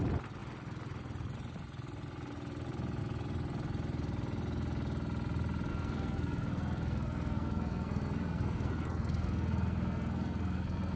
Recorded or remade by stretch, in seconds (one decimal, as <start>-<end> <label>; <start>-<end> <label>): 0.0-5.7 recorded; 5.7-11.0 remade